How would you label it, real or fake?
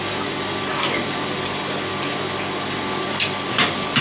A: real